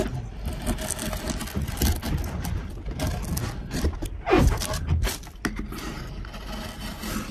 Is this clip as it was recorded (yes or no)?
yes